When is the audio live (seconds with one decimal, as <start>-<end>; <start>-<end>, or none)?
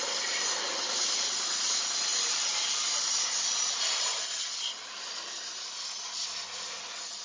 0.0-7.2